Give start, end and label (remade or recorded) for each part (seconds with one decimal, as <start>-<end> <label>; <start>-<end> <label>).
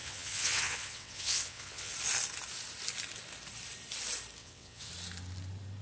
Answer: 0.0-1.9 remade; 1.9-4.4 recorded; 4.4-4.9 remade; 4.9-5.8 recorded